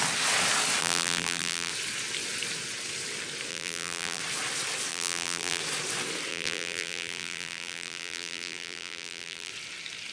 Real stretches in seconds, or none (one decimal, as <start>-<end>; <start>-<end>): 0.0-0.8; 1.7-3.5; 4.2-4.9; 5.6-6.3; 9.5-10.1

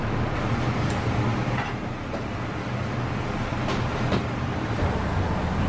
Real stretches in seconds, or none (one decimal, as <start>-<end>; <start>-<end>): 0.0-1.3; 2.5-3.5; 4.6-5.7

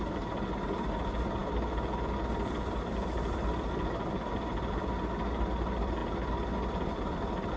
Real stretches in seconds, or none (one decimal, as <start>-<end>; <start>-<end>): 0.0-7.6

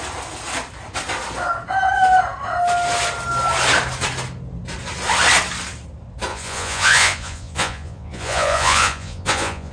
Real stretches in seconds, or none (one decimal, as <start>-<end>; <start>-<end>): 0.0-6.3